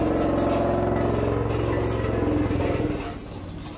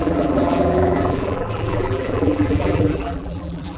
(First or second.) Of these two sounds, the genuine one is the first